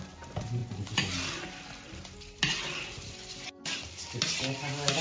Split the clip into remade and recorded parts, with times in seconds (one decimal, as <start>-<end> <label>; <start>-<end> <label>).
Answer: 0.0-5.0 recorded